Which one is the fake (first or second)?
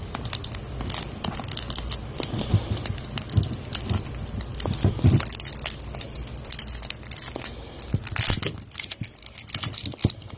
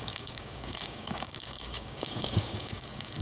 second